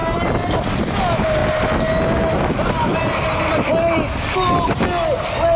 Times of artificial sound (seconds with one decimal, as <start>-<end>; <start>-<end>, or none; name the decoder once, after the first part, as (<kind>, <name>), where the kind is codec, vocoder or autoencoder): 0.0-0.6 (vocoder, BigVGAN v2)